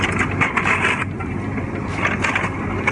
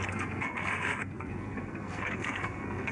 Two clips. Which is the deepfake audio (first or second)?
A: second